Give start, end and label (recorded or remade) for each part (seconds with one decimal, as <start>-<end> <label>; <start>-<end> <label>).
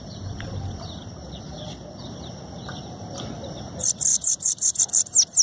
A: 0.0-4.1 recorded; 4.1-4.8 remade; 4.8-5.4 recorded